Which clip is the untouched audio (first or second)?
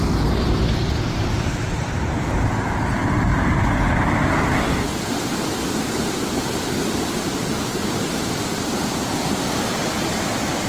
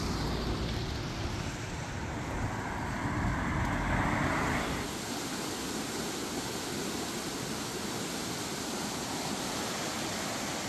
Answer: second